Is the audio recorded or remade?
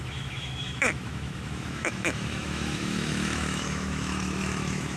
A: remade